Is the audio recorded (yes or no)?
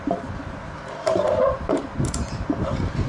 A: no